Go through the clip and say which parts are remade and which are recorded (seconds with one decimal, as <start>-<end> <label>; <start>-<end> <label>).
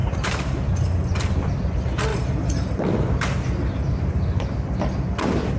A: 0.0-0.7 remade; 0.7-2.1 recorded; 2.1-2.7 remade; 2.7-5.6 recorded